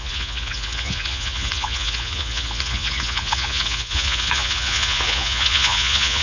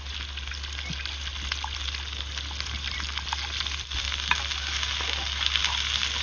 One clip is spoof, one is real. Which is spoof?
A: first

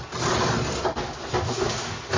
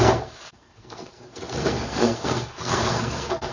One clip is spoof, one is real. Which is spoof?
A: second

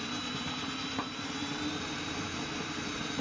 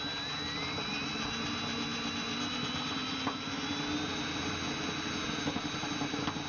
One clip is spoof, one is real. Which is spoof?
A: first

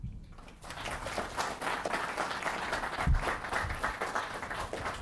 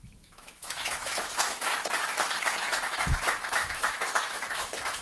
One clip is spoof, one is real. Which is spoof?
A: second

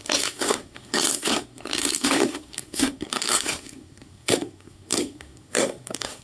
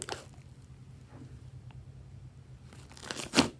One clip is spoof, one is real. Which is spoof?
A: first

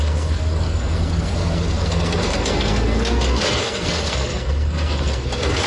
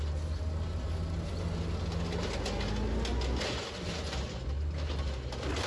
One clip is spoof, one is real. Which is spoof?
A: first